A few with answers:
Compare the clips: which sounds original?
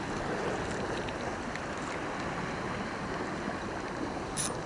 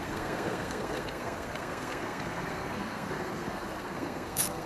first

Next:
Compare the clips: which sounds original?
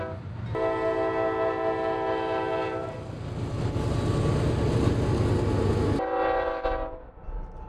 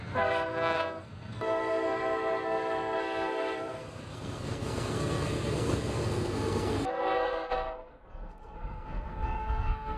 first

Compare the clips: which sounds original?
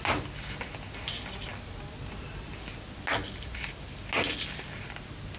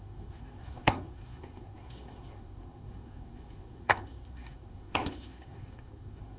first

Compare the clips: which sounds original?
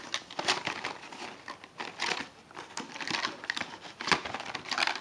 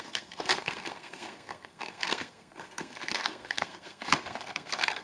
first